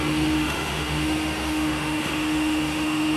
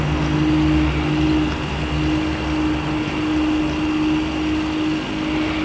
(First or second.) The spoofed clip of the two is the first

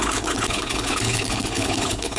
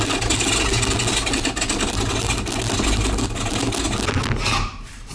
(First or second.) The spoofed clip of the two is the first